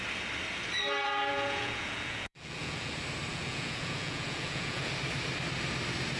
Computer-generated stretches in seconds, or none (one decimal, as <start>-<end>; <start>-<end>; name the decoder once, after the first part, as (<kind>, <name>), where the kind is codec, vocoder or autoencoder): 1.3-2.9 (vocoder, Vocos); 3.3-4.9